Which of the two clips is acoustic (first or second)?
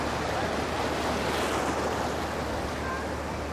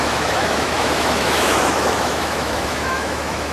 first